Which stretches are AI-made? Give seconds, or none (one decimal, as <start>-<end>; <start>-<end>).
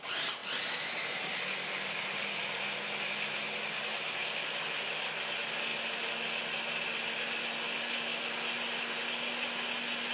none